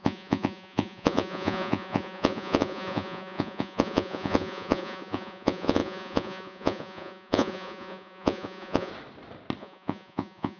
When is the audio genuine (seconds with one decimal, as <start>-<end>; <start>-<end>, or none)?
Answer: 8.9-9.6